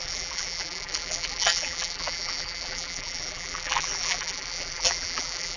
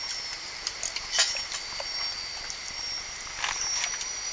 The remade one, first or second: first